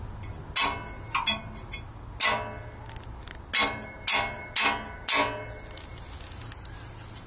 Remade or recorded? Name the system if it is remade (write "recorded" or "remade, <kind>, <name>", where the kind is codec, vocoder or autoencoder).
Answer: recorded